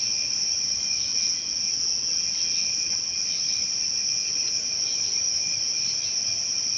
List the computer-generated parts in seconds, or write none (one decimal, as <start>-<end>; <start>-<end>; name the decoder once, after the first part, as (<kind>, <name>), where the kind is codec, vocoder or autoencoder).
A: 1.1-3.2 (vocoder, WaveNeXt)